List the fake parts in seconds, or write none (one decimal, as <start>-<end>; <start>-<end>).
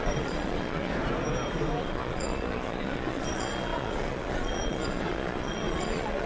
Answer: 0.0-0.9; 1.8-6.3